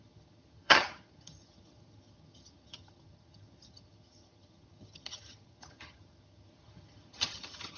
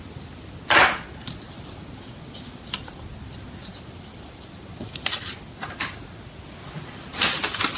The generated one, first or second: first